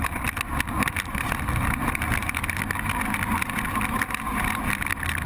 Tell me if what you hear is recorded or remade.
recorded